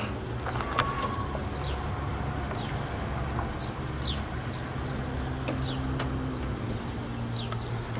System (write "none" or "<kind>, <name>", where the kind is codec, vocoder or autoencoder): none